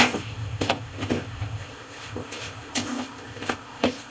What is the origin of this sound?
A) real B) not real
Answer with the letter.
B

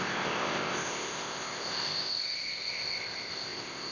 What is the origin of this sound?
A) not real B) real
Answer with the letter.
A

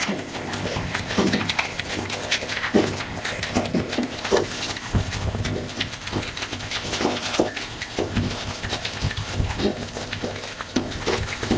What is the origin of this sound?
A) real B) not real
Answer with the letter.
B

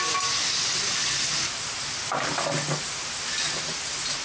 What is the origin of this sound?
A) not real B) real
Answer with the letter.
B